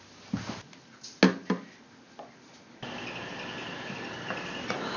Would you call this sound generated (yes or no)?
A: no